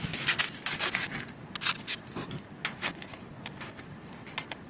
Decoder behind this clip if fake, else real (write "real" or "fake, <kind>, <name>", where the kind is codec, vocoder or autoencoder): real